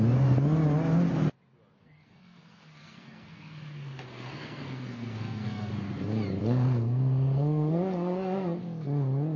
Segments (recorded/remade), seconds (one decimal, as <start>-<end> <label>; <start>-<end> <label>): 0.0-1.8 recorded; 1.8-5.7 remade; 5.7-6.4 recorded; 6.4-8.6 remade; 8.6-9.4 recorded